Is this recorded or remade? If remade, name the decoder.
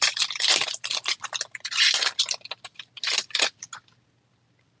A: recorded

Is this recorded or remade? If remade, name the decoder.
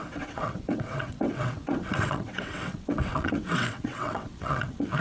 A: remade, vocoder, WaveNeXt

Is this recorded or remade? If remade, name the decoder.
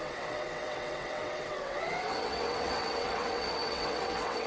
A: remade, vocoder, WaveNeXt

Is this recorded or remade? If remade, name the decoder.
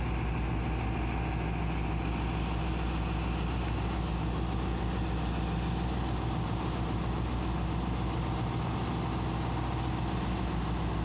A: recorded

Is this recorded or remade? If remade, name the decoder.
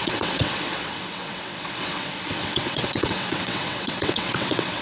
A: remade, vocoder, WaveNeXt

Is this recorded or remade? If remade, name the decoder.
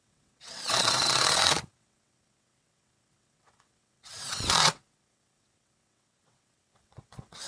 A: remade, vocoder, WaveNeXt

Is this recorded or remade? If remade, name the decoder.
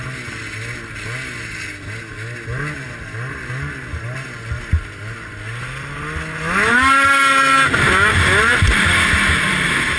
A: recorded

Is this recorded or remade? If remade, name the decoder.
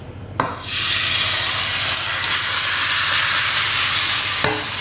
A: recorded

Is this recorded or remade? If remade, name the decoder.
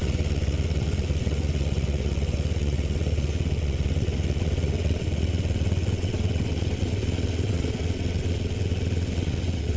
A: remade, vocoder, WaveNeXt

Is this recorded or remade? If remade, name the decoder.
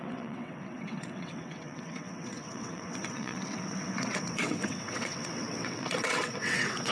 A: remade, vocoder, WaveNeXt